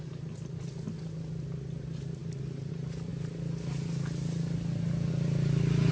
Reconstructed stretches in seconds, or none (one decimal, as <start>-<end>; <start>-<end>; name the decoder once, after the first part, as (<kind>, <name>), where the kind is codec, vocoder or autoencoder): none